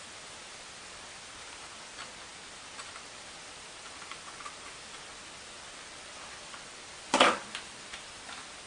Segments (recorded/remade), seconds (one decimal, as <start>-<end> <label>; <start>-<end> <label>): 0.0-8.7 recorded